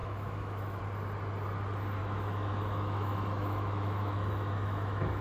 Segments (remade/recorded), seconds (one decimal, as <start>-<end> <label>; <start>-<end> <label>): 0.0-0.8 remade; 0.8-2.0 recorded; 2.0-5.2 remade

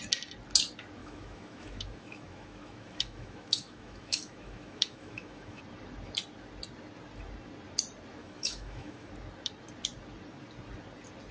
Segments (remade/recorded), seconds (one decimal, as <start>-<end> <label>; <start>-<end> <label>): 0.0-1.0 recorded; 1.0-5.6 remade; 5.6-8.2 recorded; 8.2-9.1 remade; 9.1-11.3 recorded

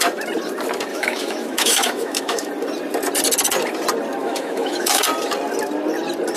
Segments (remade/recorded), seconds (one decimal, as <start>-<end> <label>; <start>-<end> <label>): 0.0-0.9 recorded; 0.9-2.5 remade; 2.5-4.2 recorded; 4.2-5.0 remade; 5.0-6.4 recorded

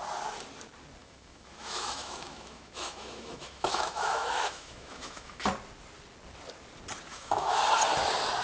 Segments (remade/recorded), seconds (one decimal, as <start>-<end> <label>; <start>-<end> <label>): 0.0-1.0 recorded; 1.0-5.4 remade; 5.4-7.1 recorded; 7.1-7.6 remade; 7.6-8.4 recorded